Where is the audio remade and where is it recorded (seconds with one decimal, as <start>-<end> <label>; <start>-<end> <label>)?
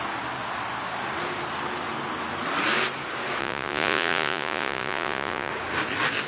0.0-3.4 recorded; 3.4-5.5 remade; 5.5-6.3 recorded